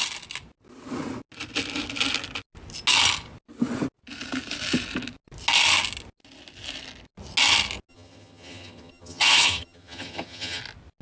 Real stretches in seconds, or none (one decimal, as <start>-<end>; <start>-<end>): 0.0-7.9; 10.6-11.0